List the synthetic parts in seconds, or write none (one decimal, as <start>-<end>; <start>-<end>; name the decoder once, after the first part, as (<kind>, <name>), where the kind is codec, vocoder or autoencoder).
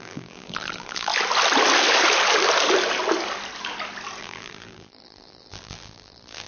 0.0-1.1 (vocoder, BigVGAN v2); 4.2-6.5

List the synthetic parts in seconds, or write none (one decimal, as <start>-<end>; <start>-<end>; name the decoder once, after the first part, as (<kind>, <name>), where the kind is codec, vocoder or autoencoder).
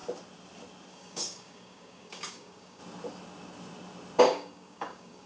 0.9-2.8 (codec, DAC); 4.2-5.3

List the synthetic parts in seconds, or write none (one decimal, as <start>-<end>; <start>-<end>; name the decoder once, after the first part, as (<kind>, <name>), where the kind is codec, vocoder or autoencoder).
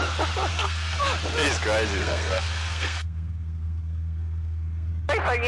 0.5-1.0 (codec, SNAC); 2.0-4.9